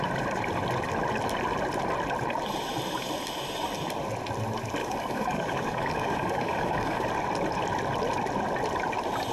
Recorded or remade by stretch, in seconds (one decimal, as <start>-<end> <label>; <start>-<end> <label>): 0.0-4.8 recorded; 4.8-7.1 remade; 7.1-9.3 recorded